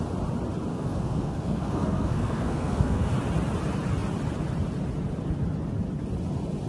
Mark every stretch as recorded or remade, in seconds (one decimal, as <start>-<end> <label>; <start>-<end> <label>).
0.0-0.7 recorded; 0.7-3.1 remade; 3.1-6.7 recorded